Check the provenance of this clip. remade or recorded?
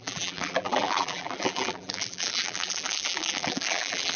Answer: remade